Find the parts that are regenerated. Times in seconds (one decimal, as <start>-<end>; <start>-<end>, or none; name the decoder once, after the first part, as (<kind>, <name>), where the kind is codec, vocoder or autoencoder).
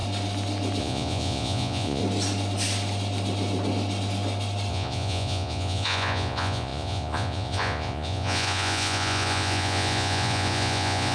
0.8-2.0 (vocoder, Vocos); 4.7-11.1